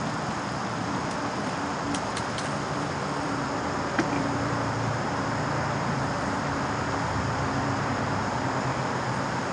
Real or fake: fake